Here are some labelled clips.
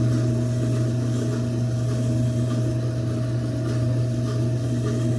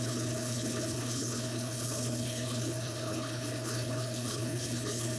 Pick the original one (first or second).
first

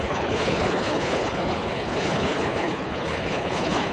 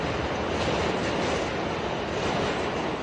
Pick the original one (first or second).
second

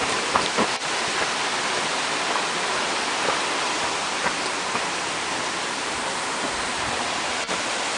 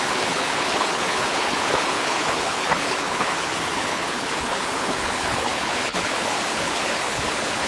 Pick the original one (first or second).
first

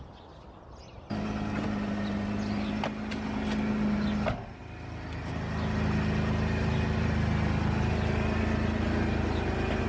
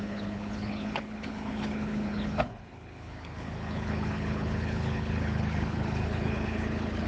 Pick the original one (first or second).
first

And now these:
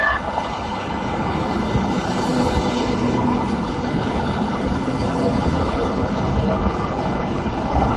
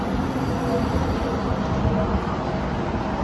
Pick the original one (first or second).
second